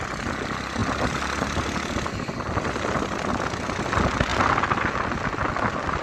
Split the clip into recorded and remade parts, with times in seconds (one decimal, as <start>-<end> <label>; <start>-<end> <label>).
0.0-6.0 recorded